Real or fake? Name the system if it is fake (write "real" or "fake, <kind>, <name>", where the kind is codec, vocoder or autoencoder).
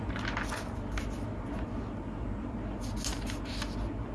real